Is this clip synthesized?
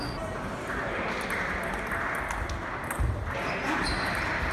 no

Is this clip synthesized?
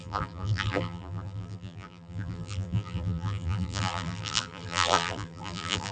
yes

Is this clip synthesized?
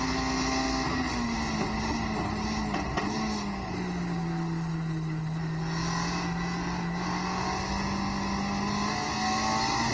no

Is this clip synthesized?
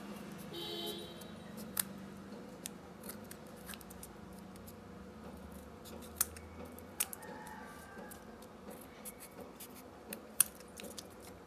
no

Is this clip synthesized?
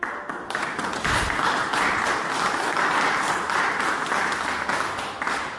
no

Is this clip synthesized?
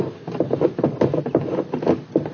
no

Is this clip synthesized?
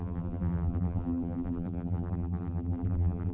yes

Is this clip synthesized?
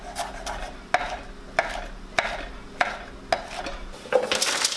no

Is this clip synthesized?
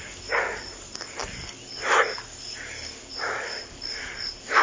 no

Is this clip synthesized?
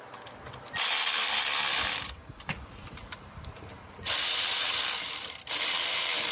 yes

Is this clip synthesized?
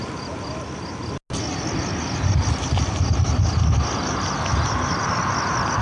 no